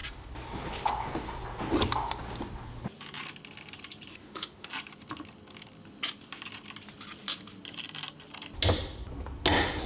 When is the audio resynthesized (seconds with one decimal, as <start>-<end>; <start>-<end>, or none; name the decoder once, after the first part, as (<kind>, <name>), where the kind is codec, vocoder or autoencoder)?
4.1-4.7 (autoencoder, DAC-VAE)